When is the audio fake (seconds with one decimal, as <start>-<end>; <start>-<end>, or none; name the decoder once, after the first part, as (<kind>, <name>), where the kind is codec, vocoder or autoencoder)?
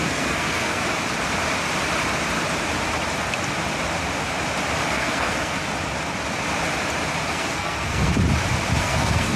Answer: 0.0-0.8 (codec, SNAC); 4.9-5.6; 7.3-8.1; 8.8-9.4